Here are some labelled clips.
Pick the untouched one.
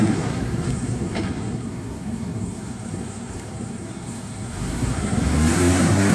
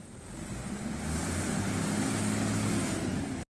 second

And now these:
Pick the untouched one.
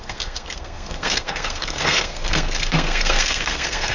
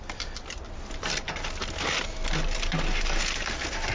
second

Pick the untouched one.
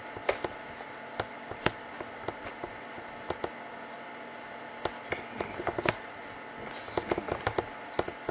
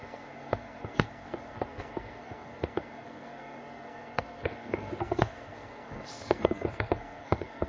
first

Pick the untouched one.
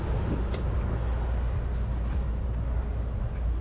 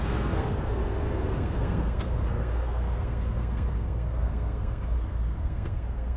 first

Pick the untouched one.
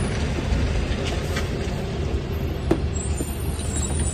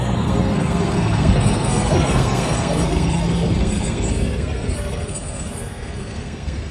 first